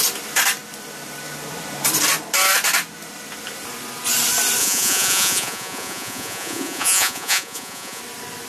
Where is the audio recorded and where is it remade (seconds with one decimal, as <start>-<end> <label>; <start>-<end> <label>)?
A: 0.0-4.6 recorded; 4.6-8.0 remade; 8.0-8.5 recorded